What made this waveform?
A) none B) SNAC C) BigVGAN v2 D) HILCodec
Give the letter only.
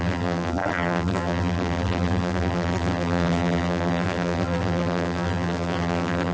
C